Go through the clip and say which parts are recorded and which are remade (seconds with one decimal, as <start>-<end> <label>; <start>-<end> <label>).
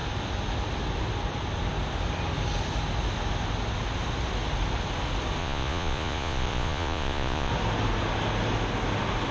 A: 0.0-5.4 recorded; 5.4-7.5 remade; 7.5-9.3 recorded